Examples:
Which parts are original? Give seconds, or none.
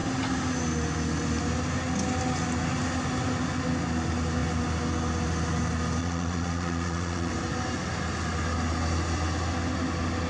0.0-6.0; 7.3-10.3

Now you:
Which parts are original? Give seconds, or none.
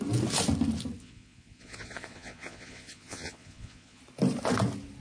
0.0-1.0; 4.0-5.0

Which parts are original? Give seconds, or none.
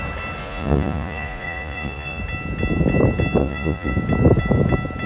0.0-0.4; 2.2-3.4; 3.9-5.1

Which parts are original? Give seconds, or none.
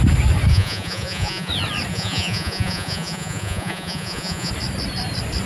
0.0-0.5; 1.5-1.9; 4.5-5.5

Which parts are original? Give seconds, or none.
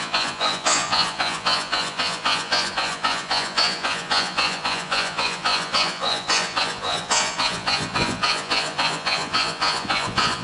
none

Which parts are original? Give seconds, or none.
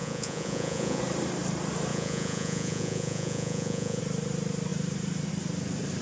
1.0-1.9; 4.0-6.0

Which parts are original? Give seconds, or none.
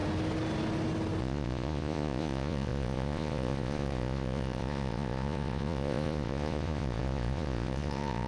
0.0-1.2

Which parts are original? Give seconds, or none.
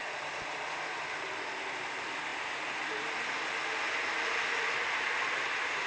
0.0-5.9